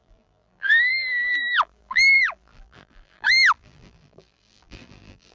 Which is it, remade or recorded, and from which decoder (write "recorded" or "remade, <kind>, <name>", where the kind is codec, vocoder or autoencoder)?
remade, vocoder, BigVGAN v2